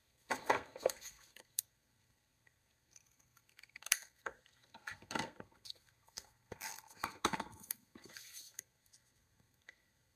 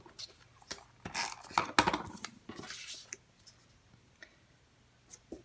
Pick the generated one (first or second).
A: first